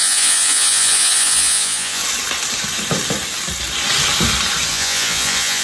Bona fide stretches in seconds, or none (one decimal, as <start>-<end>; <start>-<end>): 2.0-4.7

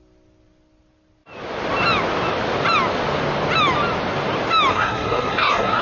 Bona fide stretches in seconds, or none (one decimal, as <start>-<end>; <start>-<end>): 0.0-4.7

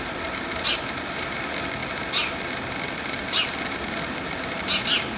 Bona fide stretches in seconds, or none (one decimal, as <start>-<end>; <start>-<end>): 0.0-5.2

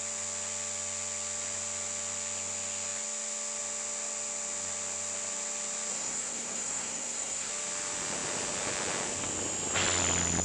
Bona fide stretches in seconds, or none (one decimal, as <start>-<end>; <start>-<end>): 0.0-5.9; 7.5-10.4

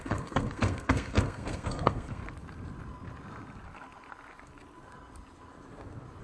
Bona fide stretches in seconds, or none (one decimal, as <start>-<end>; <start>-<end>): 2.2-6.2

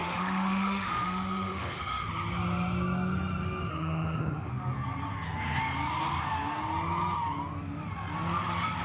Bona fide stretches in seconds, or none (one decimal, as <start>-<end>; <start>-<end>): 2.1-3.7; 4.5-8.8

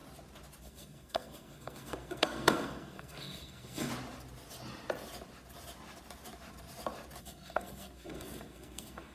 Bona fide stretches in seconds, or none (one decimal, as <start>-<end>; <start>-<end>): 0.0-0.6; 3.9-7.2

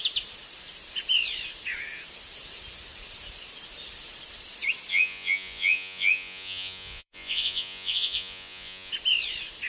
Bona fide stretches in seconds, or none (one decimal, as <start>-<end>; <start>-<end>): 0.0-4.9; 8.9-9.7